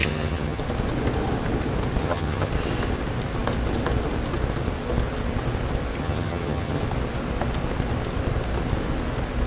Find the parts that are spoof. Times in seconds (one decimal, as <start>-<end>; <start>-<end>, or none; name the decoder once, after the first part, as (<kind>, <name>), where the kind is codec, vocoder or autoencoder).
0.0-0.6 (vocoder, HiFi-GAN); 2.0-2.5; 6.0-6.8